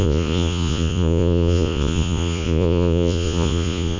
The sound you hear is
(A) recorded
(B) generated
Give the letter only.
B